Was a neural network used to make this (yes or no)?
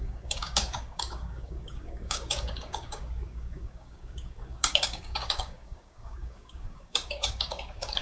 yes